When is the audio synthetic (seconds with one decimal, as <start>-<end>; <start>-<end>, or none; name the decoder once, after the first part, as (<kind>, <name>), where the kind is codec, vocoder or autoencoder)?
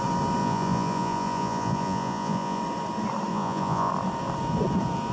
0.4-2.6 (vocoder, Vocos); 3.3-3.9